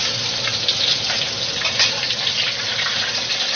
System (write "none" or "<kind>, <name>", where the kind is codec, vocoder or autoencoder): none